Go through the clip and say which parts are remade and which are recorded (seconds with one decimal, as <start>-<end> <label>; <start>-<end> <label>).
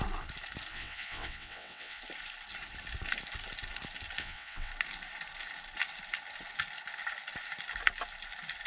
0.0-0.7 recorded; 0.7-2.0 remade; 2.0-4.2 recorded; 4.2-4.7 remade; 4.7-8.7 recorded